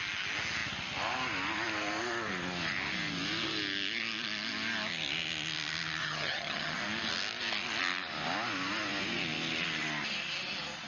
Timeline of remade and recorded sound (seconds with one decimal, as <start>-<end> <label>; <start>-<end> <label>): 0.0-6.0 recorded; 6.0-6.8 remade; 6.8-10.9 recorded